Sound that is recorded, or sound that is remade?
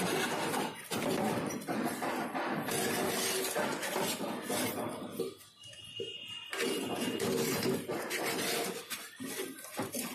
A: recorded